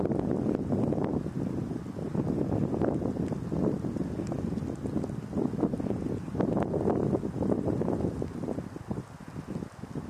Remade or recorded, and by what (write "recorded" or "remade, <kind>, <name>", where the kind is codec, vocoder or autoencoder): recorded